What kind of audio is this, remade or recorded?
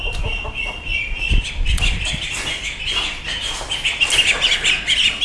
recorded